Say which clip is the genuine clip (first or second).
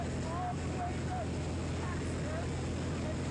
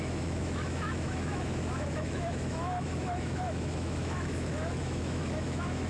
first